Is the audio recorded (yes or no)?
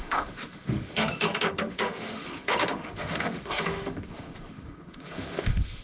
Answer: no